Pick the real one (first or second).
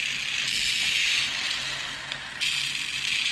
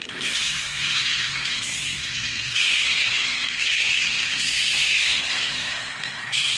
first